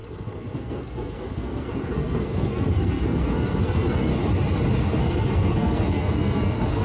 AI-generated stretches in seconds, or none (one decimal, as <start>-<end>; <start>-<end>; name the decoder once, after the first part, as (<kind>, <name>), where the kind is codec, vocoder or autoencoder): 0.0-4.1 (codec, SNAC); 4.8-6.8

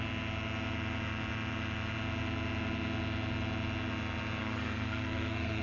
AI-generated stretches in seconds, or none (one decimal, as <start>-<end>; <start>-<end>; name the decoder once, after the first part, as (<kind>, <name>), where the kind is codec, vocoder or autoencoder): 4.4-5.6 (codec, SNAC)

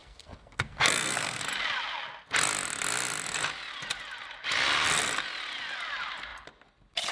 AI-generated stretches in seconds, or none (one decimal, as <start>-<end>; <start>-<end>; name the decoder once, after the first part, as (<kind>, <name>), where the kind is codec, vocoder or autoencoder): 0.0-1.4 (codec, SNAC)

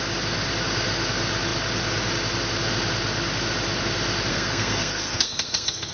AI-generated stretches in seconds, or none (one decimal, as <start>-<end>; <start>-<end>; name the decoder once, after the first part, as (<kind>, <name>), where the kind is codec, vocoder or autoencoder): 4.3-5.9 (codec, SNAC)

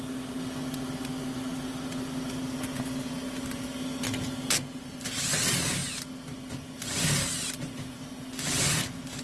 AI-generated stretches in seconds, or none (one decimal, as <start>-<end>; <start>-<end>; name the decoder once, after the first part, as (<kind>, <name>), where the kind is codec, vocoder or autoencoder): none